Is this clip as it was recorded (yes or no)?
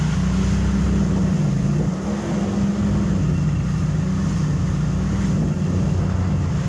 yes